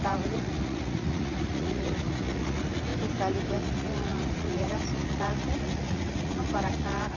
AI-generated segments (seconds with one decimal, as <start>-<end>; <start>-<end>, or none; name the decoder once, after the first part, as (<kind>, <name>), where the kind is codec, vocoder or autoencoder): 0.0-2.9 (vocoder, Vocos); 3.5-7.2